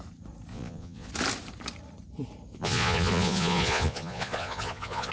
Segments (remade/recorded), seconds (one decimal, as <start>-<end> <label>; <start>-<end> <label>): 0.0-0.5 recorded; 0.5-1.1 remade; 1.1-2.5 recorded; 2.5-5.1 remade